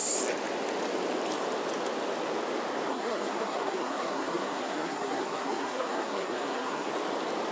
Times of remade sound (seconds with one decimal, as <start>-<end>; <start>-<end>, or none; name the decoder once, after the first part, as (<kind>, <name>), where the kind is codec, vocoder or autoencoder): 2.9-6.9 (codec, SNAC)